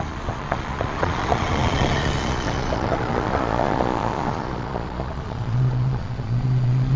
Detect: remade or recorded remade